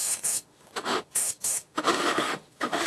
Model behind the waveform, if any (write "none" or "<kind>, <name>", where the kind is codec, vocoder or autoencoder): autoencoder, DAC-VAE